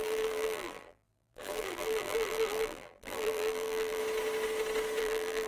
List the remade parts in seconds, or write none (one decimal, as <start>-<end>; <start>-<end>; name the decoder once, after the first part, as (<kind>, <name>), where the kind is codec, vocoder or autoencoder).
0.0-4.0 (vocoder, BigVGAN v2); 5.0-5.5